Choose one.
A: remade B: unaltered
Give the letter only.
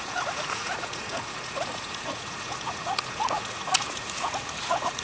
A